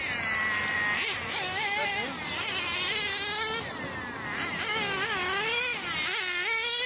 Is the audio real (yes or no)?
yes